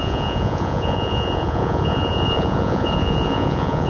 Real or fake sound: fake